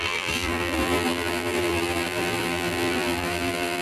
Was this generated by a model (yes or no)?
yes